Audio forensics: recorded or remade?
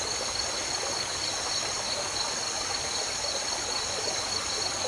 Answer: recorded